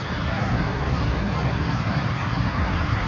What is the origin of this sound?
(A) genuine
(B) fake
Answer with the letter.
B